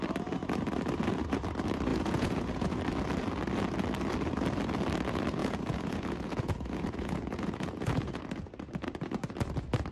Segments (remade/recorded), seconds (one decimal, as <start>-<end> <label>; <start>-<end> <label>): 0.0-1.9 recorded; 1.9-2.8 remade; 2.8-5.4 recorded; 5.4-8.2 remade; 8.2-9.9 recorded